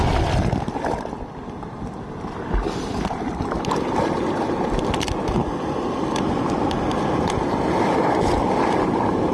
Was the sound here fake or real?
real